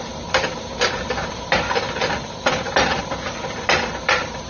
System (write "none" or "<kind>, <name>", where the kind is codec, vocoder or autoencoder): vocoder, BigVGAN v2